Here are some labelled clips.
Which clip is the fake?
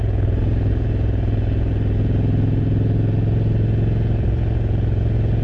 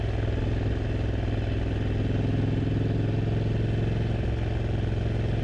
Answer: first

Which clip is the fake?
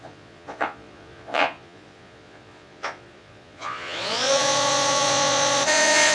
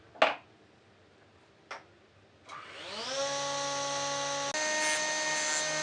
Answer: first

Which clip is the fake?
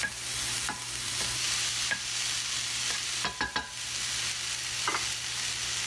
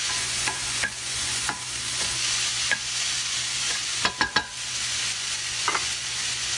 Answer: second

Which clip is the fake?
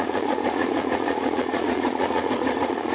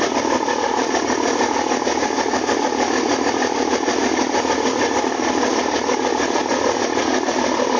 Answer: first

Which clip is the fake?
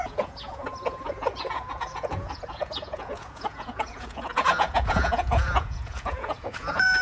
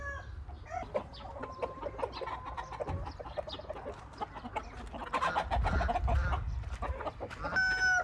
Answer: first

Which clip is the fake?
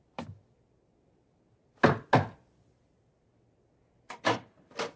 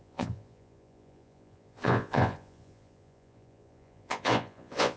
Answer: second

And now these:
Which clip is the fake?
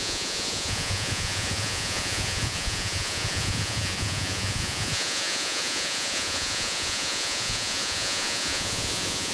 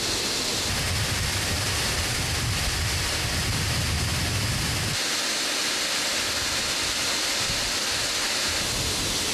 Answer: first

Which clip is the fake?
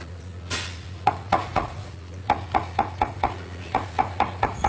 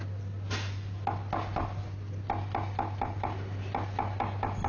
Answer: first